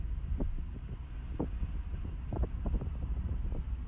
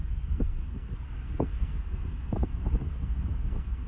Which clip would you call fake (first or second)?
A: second